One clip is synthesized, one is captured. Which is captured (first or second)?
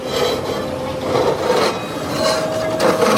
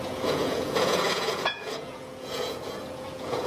first